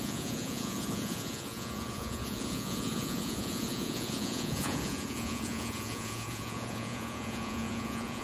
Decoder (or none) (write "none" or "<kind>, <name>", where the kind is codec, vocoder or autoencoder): vocoder, Vocos